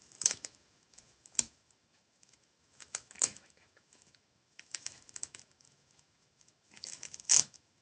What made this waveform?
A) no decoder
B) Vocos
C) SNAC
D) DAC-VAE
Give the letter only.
D